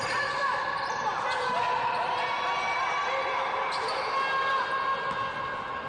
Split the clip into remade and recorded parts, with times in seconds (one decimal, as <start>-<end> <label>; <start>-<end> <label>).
0.0-5.9 recorded